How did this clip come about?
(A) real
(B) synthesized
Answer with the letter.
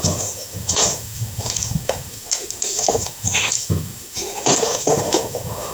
B